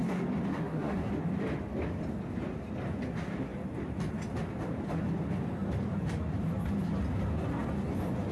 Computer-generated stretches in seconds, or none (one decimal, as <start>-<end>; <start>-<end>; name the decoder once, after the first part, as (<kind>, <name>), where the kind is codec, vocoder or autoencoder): 0.5-1.1 (codec, SNAC)